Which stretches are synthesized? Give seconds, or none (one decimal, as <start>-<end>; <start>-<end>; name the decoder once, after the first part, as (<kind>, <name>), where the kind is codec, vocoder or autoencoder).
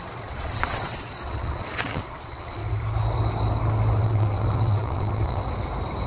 0.0-2.6 (vocoder, WaveNeXt); 4.0-5.4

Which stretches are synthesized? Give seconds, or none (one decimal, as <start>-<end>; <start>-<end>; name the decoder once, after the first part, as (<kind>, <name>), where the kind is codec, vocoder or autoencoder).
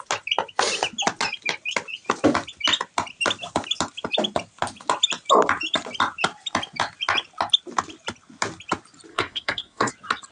9.1-9.9 (codec, SNAC)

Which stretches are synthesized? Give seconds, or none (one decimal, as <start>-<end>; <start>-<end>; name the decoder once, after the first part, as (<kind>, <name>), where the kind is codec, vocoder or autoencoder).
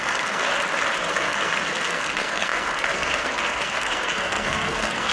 0.0-0.5 (codec, SNAC); 1.1-5.1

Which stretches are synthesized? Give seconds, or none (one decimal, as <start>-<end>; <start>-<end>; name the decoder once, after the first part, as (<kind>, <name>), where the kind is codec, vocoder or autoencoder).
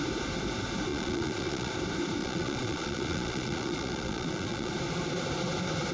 0.9-1.7 (vocoder, Vocos); 2.2-4.7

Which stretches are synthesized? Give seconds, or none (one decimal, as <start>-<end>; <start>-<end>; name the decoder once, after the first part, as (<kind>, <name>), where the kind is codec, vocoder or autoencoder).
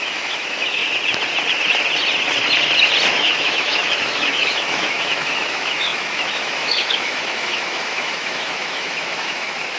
0.0-0.8 (autoencoder, DAC-VAE); 3.1-9.8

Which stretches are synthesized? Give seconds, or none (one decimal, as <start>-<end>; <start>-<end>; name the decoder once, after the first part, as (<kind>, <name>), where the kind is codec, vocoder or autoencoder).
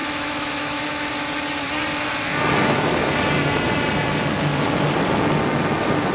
0.0-1.1 (autoencoder, DAC-VAE)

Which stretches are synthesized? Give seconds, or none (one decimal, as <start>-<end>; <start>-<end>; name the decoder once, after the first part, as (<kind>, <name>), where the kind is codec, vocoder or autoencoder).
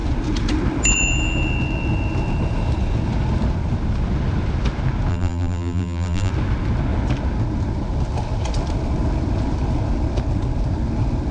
5.1-6.3 (vocoder, BigVGAN v2)